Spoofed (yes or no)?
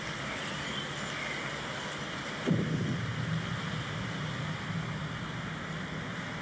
no